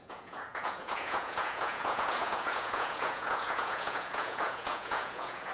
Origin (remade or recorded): remade